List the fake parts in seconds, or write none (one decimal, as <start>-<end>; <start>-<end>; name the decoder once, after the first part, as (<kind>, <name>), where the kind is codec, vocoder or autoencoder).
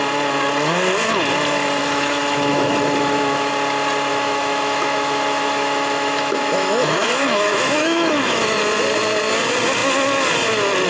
1.8-3.5 (autoencoder, DAC-VAE); 4.1-8.6